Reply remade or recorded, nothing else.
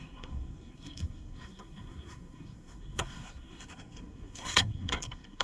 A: remade